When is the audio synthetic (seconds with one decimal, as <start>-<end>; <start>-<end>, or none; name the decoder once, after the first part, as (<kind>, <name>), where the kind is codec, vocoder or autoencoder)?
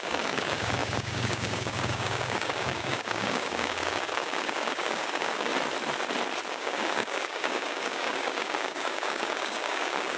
0.0-5.5 (codec, DAC); 6.5-10.2